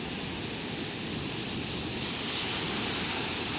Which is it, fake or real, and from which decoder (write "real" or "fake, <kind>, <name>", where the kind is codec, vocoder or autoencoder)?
real